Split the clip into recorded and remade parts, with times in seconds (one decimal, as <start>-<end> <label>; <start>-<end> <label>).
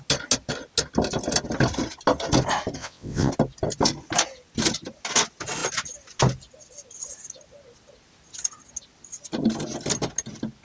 0.0-2.8 recorded; 2.8-3.3 remade; 3.3-10.6 recorded